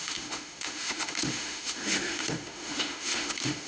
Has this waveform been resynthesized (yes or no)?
yes